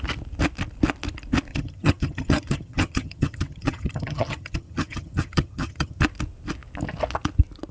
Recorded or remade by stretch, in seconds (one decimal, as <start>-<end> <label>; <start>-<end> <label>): 0.0-1.5 recorded; 1.5-6.0 remade; 6.0-7.7 recorded